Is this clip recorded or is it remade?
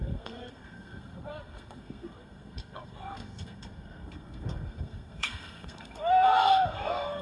remade